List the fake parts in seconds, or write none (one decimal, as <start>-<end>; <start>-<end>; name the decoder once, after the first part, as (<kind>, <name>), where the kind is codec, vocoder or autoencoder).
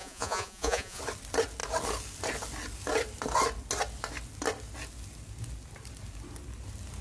0.0-1.0 (vocoder, Vocos)